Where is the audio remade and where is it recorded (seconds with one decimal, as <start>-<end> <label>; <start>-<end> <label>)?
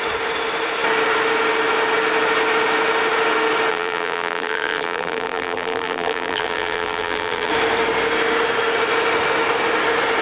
0.0-3.7 recorded; 3.7-7.5 remade; 7.5-10.2 recorded